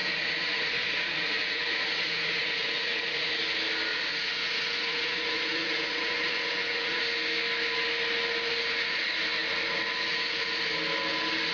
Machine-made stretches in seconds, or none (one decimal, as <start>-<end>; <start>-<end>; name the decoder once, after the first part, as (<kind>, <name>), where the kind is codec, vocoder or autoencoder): 0.0-3.3 (vocoder, Vocos); 3.9-7.0